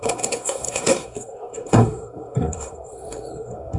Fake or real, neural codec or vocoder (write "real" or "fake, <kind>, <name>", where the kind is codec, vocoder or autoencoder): fake, codec, SNAC